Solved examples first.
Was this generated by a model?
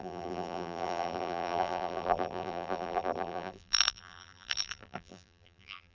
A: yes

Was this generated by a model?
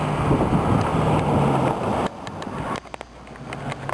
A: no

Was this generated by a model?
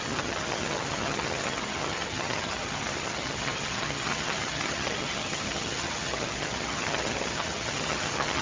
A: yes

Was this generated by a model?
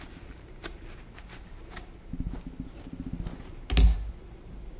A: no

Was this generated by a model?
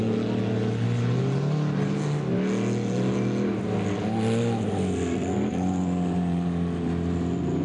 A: no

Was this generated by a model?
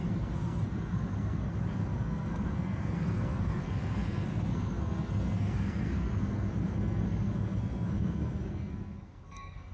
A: yes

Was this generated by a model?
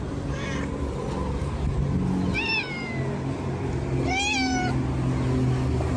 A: no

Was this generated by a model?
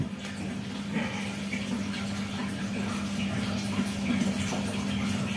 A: no